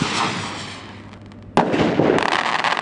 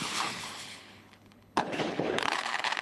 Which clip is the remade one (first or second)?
second